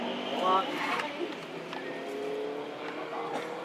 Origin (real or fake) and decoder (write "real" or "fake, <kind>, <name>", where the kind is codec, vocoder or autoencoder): real